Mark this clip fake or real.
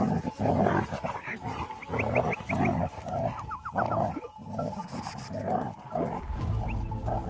real